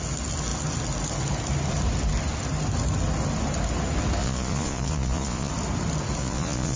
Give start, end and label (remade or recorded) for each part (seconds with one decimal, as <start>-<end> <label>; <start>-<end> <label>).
0.0-4.2 recorded; 4.2-5.5 remade; 5.5-6.2 recorded; 6.2-6.8 remade

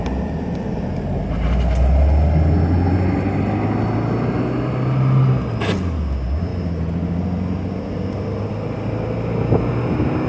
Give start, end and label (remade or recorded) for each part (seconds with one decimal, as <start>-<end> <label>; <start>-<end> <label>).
0.0-10.3 recorded